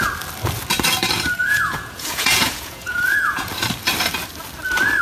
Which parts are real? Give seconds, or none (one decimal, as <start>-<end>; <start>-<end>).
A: 0.0-1.4; 3.5-5.0